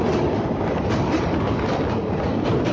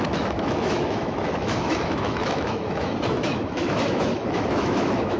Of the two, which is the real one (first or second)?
first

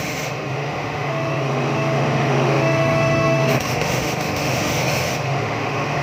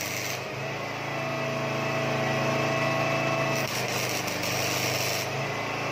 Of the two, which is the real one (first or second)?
second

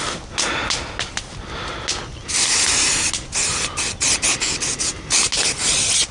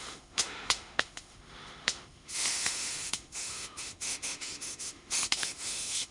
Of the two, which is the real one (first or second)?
first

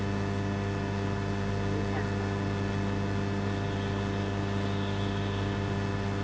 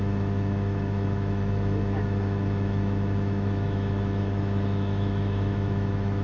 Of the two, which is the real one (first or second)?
first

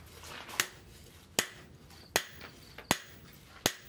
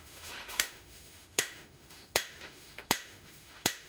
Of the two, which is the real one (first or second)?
first